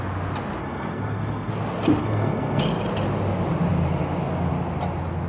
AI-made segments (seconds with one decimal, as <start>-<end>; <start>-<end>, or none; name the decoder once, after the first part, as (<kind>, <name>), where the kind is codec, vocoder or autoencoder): 0.6-1.5 (codec, SNAC); 2.0-2.6